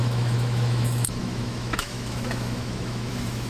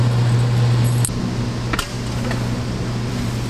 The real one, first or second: second